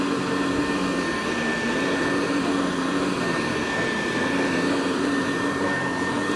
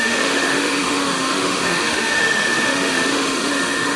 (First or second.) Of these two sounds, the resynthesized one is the second